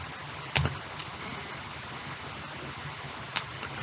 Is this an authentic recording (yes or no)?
yes